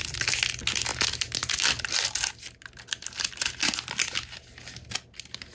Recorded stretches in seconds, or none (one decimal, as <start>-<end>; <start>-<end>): 0.0-5.5